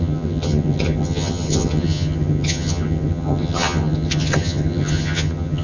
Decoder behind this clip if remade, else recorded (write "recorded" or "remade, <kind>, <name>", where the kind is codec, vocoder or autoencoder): remade, vocoder, HiFi-GAN